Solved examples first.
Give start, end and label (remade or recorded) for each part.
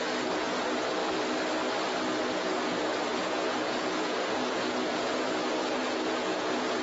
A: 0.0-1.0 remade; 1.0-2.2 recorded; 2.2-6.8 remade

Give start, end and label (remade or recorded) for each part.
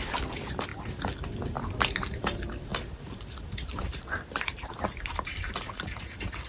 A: 0.0-0.7 remade; 0.7-1.3 recorded; 1.3-6.5 remade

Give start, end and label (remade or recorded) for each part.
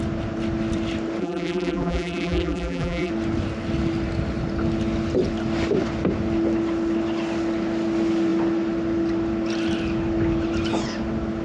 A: 0.0-1.2 recorded; 1.2-3.1 remade; 3.1-11.4 recorded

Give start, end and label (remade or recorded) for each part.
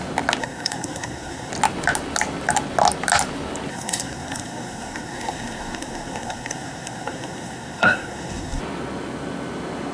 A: 0.0-0.4 recorded; 0.4-1.5 remade; 1.5-3.7 recorded; 3.7-8.6 remade; 8.6-9.9 recorded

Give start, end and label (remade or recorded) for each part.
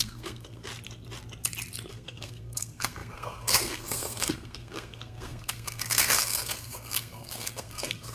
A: 0.0-0.7 remade; 0.7-1.9 recorded; 1.9-8.1 remade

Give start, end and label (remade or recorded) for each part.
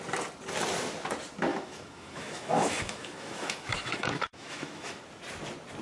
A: 0.0-1.5 recorded; 1.5-5.0 remade; 5.0-5.8 recorded